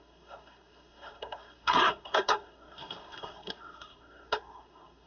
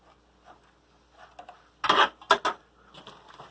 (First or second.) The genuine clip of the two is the second